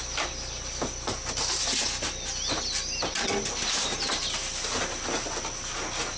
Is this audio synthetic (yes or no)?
no